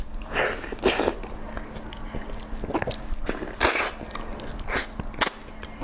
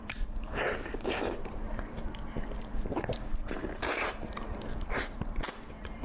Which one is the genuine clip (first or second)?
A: first